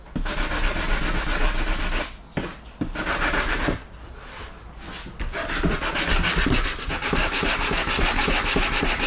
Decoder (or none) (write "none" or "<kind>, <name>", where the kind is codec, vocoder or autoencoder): none